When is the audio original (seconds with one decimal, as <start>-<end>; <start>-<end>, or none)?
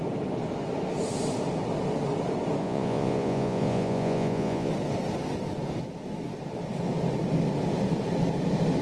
0.0-2.6; 4.7-8.8